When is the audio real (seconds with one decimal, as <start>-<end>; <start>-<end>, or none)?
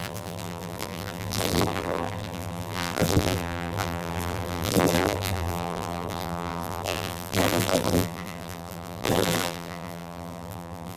none